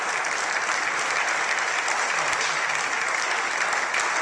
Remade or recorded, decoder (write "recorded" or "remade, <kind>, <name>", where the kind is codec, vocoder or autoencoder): recorded